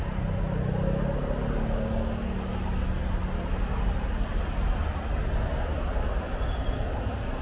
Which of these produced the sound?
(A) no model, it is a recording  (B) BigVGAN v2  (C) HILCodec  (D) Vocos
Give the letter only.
A